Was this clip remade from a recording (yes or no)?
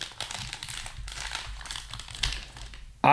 no